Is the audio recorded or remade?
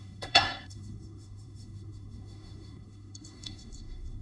remade